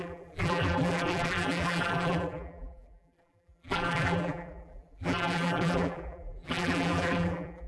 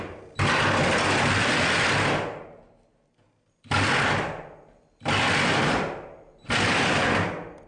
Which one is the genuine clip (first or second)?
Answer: second